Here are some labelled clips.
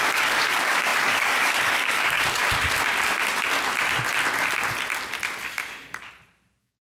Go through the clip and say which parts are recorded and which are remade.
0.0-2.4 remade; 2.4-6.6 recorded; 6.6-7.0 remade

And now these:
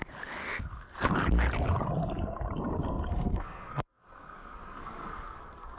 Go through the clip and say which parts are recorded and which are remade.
0.0-0.4 recorded; 0.4-1.0 remade; 1.0-3.1 recorded; 3.1-5.8 remade

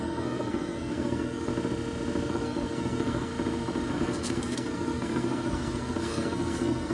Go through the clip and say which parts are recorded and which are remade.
0.0-1.5 remade; 1.5-2.3 recorded; 2.3-3.3 remade; 3.3-3.9 recorded; 3.9-6.9 remade